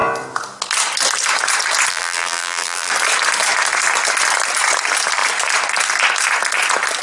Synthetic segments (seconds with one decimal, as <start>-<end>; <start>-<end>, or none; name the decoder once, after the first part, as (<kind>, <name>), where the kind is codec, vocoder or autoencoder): 1.9-2.9 (vocoder, BigVGAN v2)